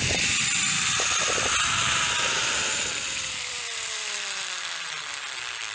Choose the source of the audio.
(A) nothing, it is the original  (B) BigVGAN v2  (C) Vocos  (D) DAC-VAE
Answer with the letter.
B